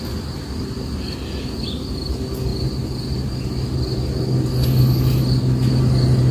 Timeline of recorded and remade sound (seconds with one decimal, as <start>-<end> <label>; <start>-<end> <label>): 0.0-6.3 recorded